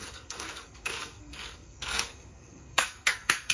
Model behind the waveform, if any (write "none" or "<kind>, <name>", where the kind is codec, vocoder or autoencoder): codec, SNAC